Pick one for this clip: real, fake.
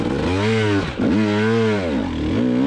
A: real